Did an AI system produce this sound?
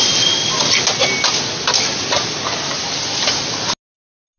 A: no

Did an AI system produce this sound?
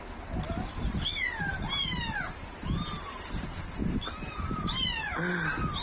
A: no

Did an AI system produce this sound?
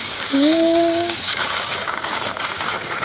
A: yes